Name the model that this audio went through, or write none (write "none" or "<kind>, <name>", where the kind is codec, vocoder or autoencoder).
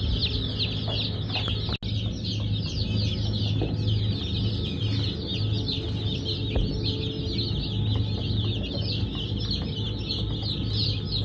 none